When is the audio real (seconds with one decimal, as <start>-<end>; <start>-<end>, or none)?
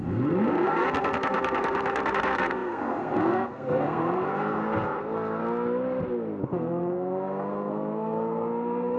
5.4-6.4